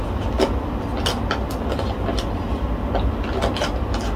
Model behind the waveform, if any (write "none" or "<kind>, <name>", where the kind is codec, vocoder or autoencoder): none